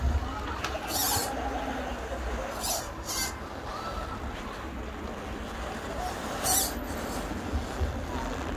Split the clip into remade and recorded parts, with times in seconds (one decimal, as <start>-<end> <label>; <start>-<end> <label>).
0.0-8.6 recorded